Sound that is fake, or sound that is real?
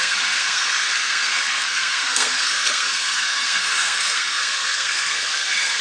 fake